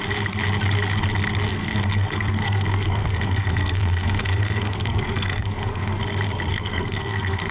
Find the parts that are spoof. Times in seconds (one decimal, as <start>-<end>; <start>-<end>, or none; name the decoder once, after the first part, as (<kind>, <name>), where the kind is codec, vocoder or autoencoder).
1.5-6.0 (codec, SNAC); 6.5-7.5